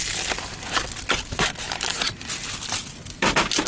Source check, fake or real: real